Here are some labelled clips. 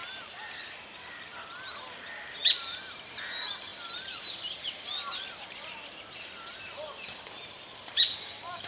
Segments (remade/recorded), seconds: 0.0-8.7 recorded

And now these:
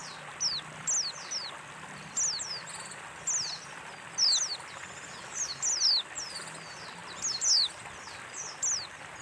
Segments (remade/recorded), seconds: 0.0-9.2 recorded